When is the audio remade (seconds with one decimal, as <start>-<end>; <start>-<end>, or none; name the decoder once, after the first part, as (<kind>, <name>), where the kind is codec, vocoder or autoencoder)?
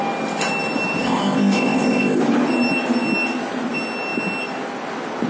1.0-2.2 (codec, ZipCodec)